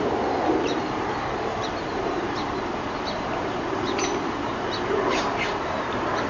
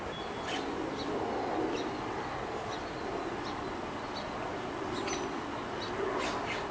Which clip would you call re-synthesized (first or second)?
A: first